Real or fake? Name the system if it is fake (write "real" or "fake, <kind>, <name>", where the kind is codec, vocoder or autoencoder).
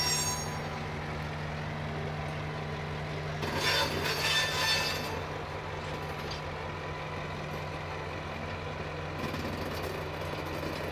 real